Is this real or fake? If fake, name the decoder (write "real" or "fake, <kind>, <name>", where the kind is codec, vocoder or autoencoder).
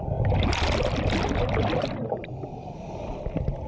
real